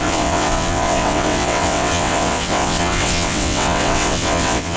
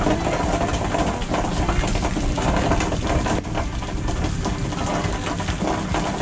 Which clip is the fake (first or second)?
first